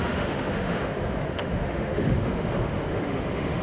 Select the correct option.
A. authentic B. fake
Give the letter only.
B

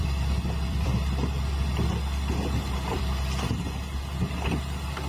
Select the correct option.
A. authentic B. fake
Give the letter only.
B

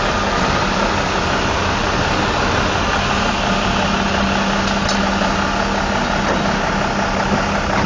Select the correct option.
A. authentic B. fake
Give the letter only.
A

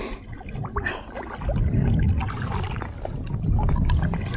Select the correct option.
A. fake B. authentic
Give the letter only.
B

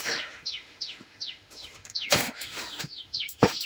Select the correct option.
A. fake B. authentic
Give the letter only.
A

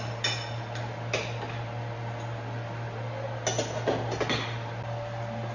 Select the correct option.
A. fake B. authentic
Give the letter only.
B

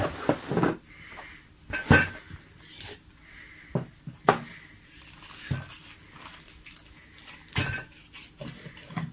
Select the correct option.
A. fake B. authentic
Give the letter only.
B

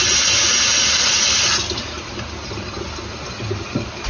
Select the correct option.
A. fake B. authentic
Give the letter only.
B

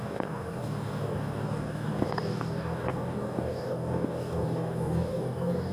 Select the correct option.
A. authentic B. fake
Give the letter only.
B